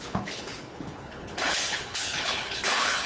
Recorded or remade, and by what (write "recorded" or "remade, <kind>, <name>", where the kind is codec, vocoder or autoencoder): remade, codec, HILCodec